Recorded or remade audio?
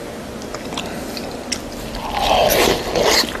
recorded